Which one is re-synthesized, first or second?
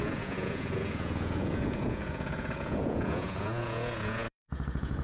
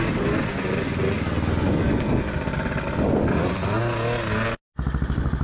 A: first